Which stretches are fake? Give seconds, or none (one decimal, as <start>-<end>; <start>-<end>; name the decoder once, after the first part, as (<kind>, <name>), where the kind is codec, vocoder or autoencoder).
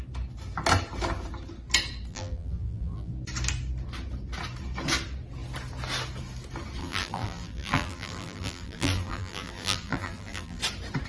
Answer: 2.1-3.1 (vocoder, BigVGAN v2); 6.8-10.6